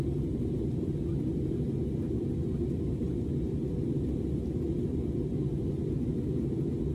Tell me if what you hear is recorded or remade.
recorded